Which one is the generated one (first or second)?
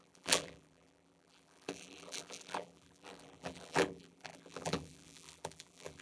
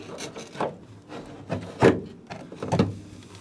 first